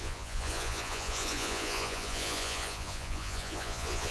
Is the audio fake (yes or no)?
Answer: yes